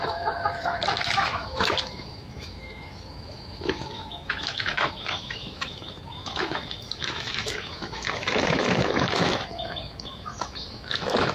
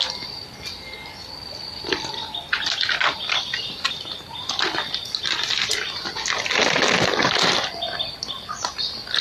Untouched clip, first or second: second